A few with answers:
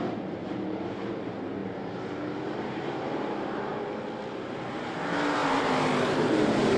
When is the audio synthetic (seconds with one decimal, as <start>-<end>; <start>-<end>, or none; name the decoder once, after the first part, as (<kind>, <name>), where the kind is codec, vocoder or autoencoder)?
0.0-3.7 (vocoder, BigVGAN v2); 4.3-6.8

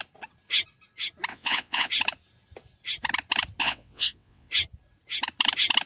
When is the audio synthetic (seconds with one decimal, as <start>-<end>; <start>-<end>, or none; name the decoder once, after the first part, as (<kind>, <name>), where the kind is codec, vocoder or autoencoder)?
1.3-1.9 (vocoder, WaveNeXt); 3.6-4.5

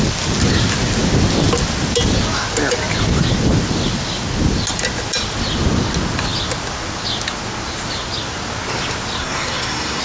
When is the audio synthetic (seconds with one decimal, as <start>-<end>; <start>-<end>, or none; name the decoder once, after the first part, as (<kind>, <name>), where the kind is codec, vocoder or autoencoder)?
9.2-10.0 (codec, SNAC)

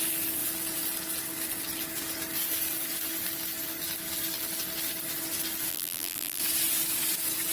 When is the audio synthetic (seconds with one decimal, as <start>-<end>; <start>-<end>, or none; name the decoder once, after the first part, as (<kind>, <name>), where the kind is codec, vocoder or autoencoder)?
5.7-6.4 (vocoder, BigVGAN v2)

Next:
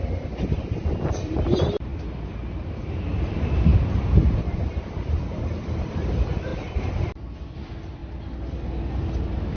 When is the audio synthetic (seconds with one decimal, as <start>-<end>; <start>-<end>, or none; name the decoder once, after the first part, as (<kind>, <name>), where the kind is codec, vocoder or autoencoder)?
0.0-1.9 (vocoder, BigVGAN v2); 2.5-8.0

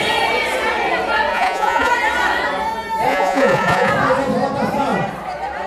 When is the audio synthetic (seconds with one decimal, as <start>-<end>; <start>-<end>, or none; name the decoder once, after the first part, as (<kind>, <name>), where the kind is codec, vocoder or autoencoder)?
1.3-1.9 (vocoder, Vocos); 3.1-3.9